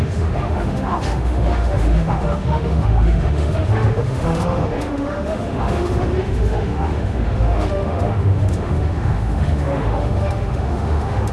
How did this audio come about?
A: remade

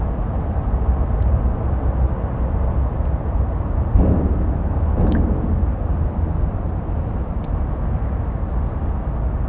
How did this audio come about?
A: recorded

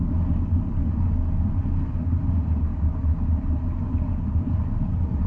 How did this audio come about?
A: recorded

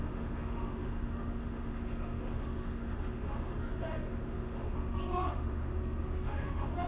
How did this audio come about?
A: remade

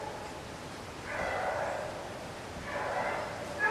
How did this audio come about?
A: recorded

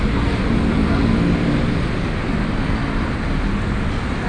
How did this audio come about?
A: recorded